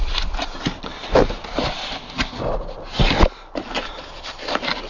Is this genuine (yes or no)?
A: yes